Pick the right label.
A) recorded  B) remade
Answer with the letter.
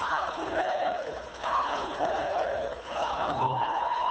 B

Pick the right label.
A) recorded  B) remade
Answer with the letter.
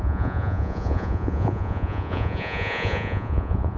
B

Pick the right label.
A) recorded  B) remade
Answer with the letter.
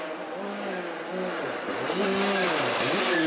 A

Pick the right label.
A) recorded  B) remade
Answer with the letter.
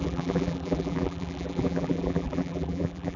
B